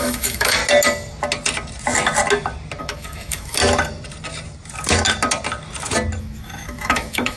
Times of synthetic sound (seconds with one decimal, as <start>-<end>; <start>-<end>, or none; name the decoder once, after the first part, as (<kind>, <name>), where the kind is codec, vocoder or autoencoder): 0.0-0.6 (autoencoder, DAC-VAE); 2.8-3.6; 6.2-7.4